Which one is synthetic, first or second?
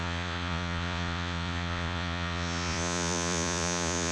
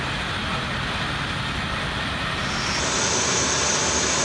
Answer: first